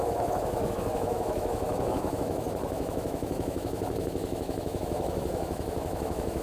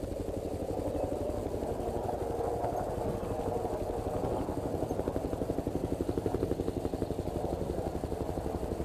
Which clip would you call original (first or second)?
second